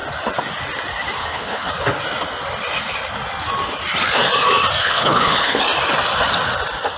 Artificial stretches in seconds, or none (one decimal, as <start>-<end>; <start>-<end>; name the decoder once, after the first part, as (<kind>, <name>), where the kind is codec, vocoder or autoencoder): 1.2-1.7 (codec, HILCodec); 4.8-5.6